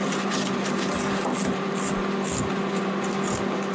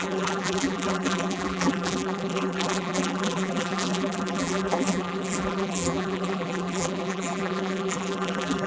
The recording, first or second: first